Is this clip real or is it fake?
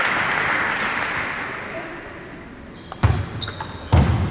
real